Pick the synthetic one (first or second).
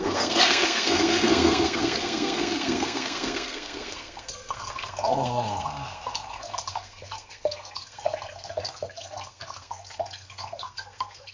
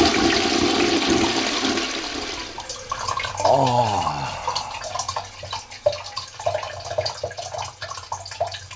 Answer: first